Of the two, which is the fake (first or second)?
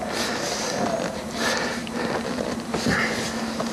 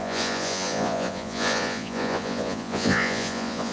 second